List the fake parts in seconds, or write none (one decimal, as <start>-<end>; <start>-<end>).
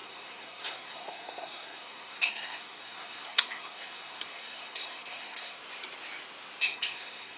0.0-5.6; 6.6-7.4